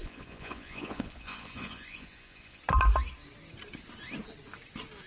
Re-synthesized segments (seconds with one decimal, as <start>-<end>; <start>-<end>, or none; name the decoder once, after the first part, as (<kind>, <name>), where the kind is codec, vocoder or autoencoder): 0.0-2.6 (vocoder, Vocos)